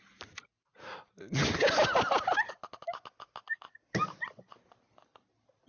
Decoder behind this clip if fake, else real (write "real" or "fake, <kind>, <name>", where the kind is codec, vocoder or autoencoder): real